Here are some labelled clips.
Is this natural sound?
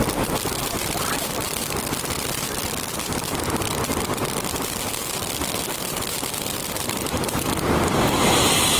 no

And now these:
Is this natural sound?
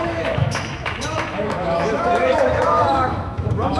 no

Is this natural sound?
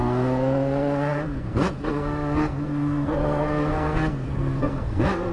no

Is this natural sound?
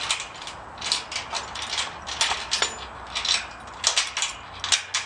yes